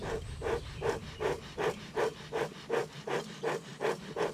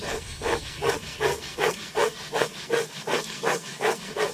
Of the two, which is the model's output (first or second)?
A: second